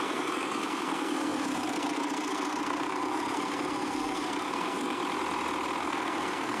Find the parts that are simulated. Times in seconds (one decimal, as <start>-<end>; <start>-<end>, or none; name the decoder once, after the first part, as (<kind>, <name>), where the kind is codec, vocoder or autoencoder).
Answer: 0.0-5.0 (codec, SNAC); 5.8-6.6

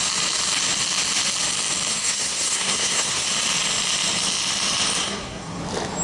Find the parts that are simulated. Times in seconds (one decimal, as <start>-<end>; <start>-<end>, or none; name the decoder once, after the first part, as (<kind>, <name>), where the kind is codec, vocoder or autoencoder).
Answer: 1.9-3.3 (codec, SNAC); 5.0-5.6

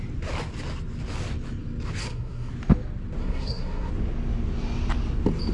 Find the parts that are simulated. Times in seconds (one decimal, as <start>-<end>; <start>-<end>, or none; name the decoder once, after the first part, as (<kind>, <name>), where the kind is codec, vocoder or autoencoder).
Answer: 2.0-2.5 (codec, SNAC); 3.2-3.9

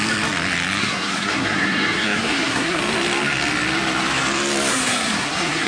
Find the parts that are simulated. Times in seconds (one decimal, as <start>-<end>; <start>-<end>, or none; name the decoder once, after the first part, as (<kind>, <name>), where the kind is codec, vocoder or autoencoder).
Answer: 0.8-2.8 (codec, SNAC); 4.7-5.7

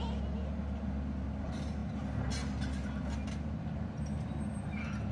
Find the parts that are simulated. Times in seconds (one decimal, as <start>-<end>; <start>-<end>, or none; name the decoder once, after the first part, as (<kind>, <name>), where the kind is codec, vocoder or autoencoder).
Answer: none

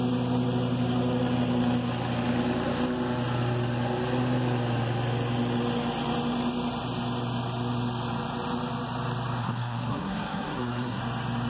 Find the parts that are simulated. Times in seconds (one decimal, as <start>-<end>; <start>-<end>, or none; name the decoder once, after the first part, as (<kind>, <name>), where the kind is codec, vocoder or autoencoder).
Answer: 9.4-11.0 (codec, SNAC)

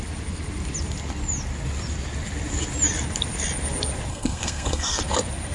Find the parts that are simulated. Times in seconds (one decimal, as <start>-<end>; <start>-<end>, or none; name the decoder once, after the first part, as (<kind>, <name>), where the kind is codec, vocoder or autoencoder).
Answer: 4.1-5.0 (codec, SNAC)

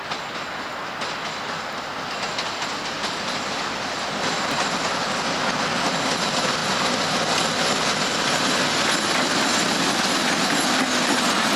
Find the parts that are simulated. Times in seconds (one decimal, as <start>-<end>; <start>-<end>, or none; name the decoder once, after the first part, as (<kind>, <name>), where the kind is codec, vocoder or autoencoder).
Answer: none